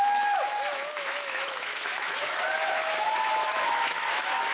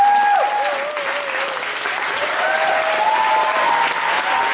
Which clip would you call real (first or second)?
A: second